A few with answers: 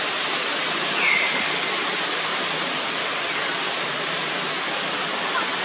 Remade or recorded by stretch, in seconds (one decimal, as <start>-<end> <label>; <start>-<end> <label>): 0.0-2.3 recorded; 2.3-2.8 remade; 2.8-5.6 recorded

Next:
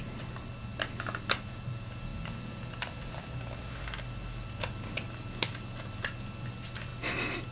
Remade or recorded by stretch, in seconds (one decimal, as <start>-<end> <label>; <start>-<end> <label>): 0.0-7.5 recorded

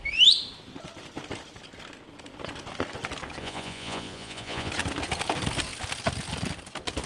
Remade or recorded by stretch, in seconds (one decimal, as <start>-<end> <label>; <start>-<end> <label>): 0.0-3.4 recorded; 3.4-4.7 remade; 4.7-7.1 recorded

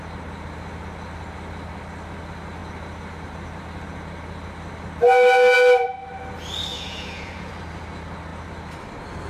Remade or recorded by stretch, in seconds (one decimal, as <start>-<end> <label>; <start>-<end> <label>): 0.0-6.7 recorded; 6.7-7.5 remade; 7.5-9.3 recorded